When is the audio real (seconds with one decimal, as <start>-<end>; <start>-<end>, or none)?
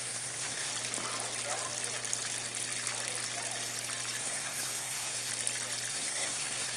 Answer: 0.7-4.2; 5.3-5.9